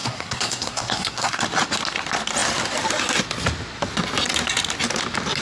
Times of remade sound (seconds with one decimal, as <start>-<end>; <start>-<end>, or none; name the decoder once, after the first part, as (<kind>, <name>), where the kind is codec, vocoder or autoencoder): 0.0-1.4 (codec, SNAC)